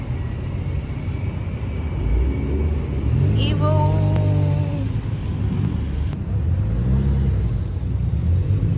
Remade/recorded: recorded